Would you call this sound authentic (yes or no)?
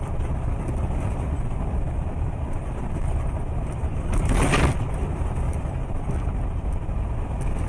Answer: yes